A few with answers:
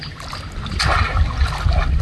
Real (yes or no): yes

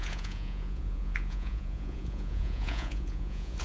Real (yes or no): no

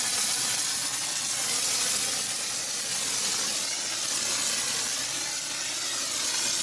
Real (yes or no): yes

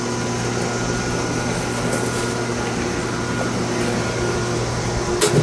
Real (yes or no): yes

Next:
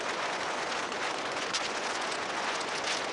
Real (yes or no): no